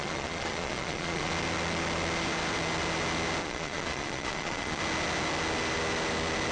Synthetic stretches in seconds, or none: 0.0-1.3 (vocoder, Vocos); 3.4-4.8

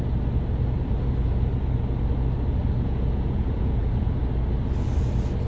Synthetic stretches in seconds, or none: 2.6-4.2 (vocoder, Vocos)

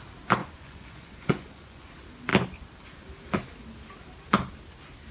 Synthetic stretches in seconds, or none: 0.4-1.9 (vocoder, Vocos)

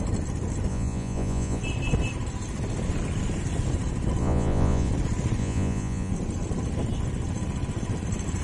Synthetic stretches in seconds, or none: 0.7-1.6 (vocoder, Vocos); 4.2-4.9; 5.4-6.1

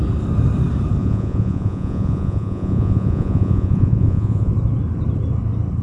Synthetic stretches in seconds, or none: 1.0-4.5 (vocoder, Vocos)

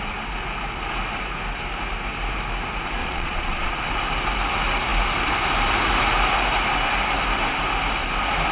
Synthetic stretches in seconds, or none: 3.0-3.7 (vocoder, Vocos)